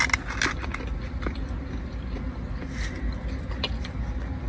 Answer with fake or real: real